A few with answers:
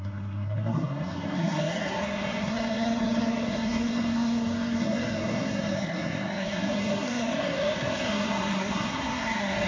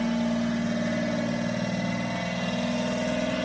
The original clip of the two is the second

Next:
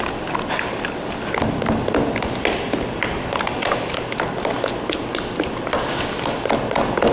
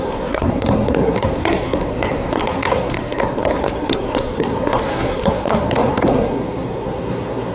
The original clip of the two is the first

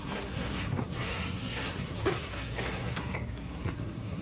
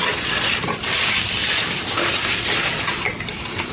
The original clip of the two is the second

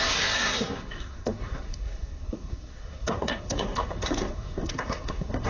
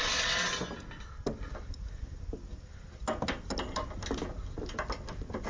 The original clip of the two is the second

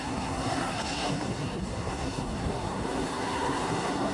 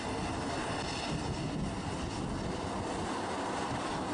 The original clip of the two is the second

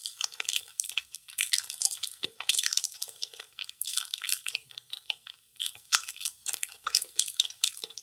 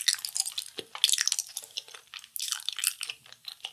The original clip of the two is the second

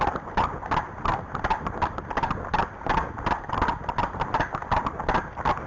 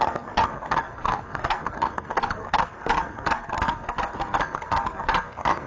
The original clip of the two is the first